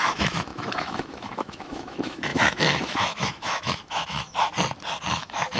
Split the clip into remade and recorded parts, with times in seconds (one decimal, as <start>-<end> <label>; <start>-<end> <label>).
0.0-4.5 remade; 4.5-5.1 recorded; 5.1-5.6 remade